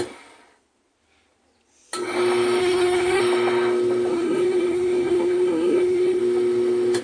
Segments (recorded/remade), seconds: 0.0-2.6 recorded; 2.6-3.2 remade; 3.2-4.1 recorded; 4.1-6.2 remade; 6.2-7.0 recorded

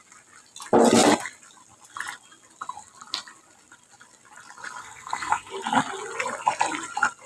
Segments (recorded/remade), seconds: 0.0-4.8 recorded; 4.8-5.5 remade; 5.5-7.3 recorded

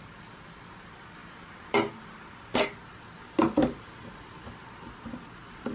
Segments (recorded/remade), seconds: 0.0-5.7 recorded

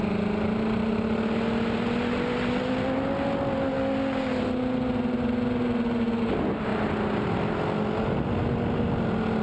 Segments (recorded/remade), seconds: 0.0-9.4 recorded

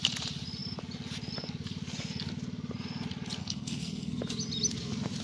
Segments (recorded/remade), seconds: 0.0-3.4 recorded; 3.4-4.2 remade; 4.2-5.2 recorded

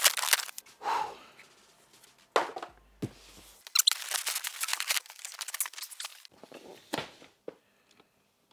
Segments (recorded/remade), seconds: 0.0-8.5 recorded

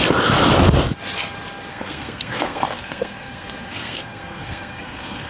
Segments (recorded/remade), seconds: 0.0-1.7 recorded; 1.7-5.3 remade

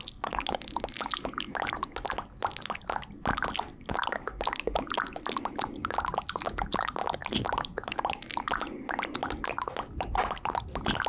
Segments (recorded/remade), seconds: 0.0-11.1 recorded